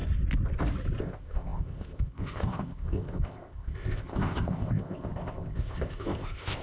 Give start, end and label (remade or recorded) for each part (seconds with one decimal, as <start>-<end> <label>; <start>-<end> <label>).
0.0-1.0 recorded; 1.0-6.6 remade